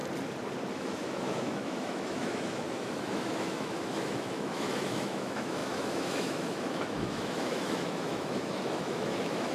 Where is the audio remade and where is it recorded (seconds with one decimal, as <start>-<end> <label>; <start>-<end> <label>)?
0.0-0.7 recorded; 0.7-9.5 remade